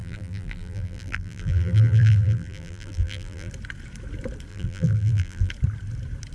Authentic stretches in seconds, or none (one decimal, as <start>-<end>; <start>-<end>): 3.5-4.5; 5.5-6.3